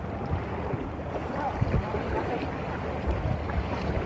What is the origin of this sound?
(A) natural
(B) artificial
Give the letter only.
A